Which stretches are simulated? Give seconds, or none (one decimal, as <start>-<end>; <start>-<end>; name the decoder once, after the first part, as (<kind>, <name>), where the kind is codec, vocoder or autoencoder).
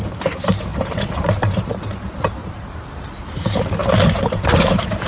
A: 0.7-1.7 (vocoder, BigVGAN v2); 2.4-2.9; 3.8-5.1